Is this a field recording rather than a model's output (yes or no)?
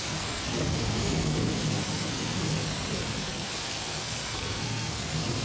no